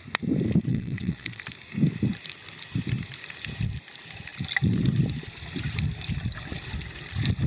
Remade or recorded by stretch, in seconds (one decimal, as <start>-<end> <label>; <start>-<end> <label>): 0.0-0.7 recorded; 0.7-1.4 remade; 1.4-7.5 recorded